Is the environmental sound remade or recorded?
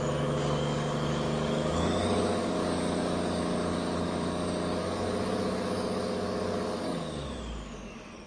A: remade